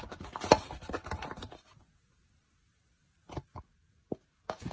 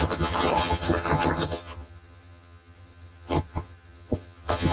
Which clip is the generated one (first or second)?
second